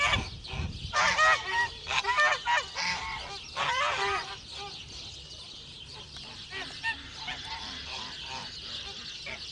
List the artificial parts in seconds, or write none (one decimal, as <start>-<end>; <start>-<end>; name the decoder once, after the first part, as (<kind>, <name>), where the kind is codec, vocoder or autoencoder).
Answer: 5.9-6.5 (vocoder, BigVGAN v2)